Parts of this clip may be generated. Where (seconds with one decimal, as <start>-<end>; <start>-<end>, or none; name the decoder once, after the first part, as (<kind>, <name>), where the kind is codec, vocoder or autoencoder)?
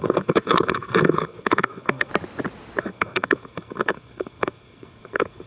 0.0-2.1 (codec, SNAC); 2.8-5.5